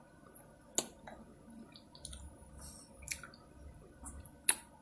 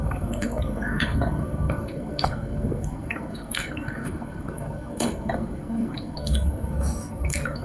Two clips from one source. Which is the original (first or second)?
first